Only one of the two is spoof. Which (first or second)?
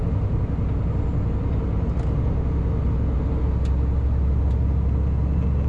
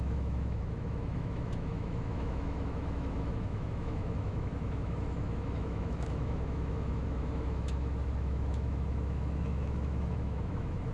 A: second